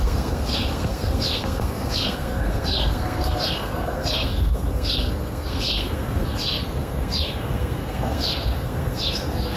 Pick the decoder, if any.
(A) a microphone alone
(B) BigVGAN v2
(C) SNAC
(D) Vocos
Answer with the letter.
C